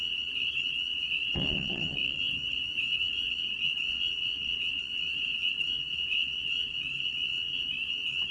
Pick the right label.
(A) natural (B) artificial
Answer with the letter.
B